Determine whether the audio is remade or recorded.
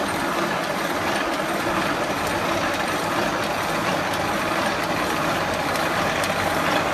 remade